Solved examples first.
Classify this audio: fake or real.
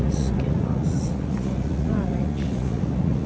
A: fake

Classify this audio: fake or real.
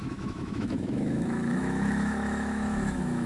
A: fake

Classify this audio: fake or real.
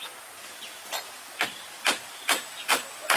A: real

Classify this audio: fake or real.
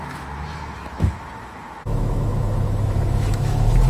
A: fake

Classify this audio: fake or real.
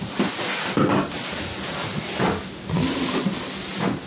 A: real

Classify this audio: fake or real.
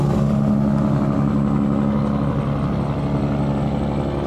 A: real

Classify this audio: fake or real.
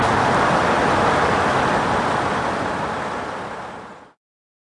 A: real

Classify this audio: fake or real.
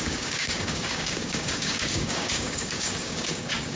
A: fake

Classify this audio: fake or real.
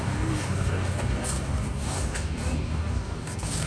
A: fake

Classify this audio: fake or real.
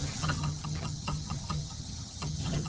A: fake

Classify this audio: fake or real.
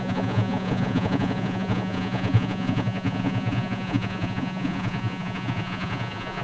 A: fake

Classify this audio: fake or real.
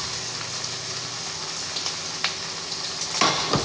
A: real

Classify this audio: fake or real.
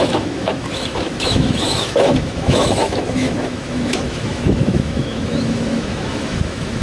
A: fake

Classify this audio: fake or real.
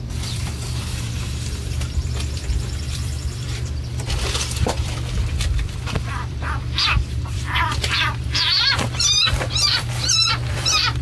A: fake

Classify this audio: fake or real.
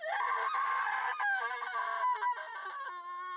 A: real